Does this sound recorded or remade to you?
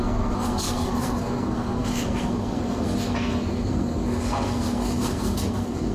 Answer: remade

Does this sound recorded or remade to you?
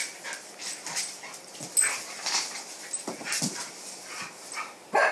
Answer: recorded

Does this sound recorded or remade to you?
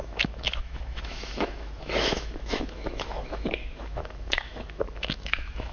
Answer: remade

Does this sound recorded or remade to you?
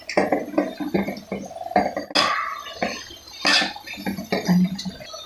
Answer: recorded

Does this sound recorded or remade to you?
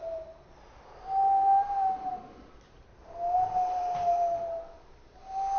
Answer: recorded